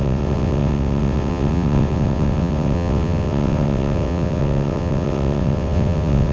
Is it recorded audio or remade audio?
remade